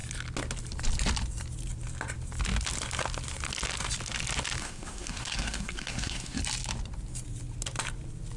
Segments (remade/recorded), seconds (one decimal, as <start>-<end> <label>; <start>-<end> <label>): 0.0-4.6 recorded; 4.6-6.4 remade; 6.4-8.4 recorded